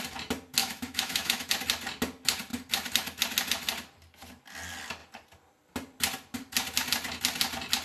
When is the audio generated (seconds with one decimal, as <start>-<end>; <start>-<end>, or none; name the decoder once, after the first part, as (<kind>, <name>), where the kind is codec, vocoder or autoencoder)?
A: 0.6-1.5 (autoencoder, DAC-VAE)